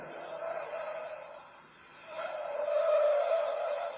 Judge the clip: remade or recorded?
recorded